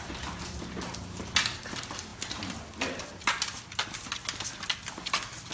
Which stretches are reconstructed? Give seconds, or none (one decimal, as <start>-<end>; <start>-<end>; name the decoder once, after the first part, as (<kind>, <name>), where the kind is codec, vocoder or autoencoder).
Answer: none